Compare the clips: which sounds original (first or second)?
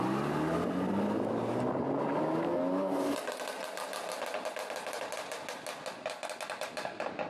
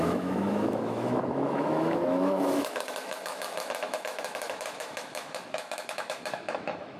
first